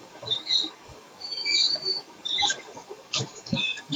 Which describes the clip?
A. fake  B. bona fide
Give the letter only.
A